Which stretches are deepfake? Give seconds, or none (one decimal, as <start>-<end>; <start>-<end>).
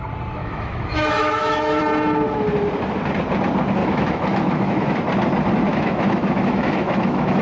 0.4-1.8; 3.8-5.0; 5.7-7.4